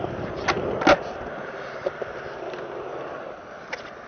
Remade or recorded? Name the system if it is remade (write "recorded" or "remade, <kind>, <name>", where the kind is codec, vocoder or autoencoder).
recorded